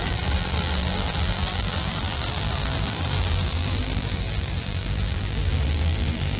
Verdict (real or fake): fake